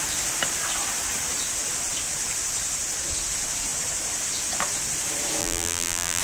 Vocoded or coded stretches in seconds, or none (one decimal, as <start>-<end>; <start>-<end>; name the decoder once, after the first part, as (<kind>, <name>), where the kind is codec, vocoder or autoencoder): 5.4-6.2 (vocoder, BigVGAN v2)